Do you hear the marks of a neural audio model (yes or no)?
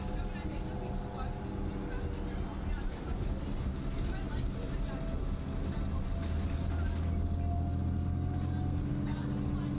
no